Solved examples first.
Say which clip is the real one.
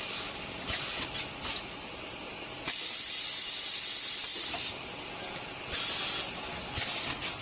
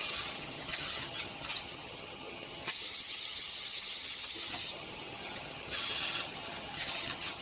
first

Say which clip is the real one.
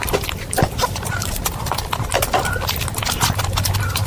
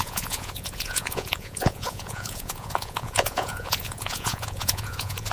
first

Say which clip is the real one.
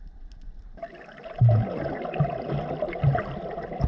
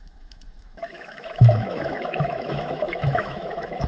first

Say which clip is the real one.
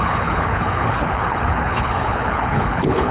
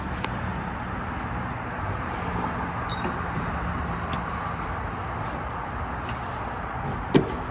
second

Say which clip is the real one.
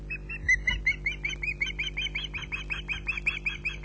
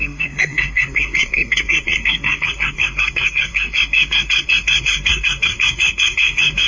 first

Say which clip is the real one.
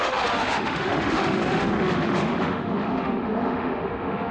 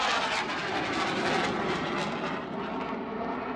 second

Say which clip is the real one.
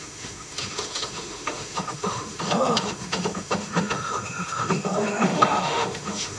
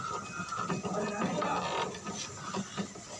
second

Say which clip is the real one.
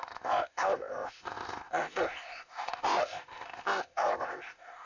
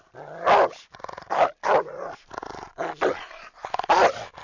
second